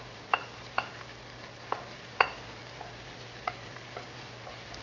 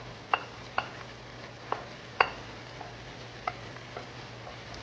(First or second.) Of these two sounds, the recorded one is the second